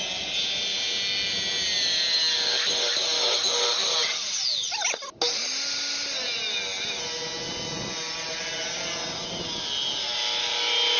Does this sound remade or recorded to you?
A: recorded